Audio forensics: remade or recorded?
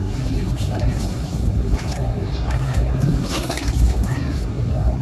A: remade